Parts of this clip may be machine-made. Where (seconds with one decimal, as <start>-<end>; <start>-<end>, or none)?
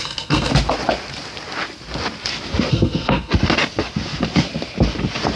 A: 0.0-0.5; 2.7-3.3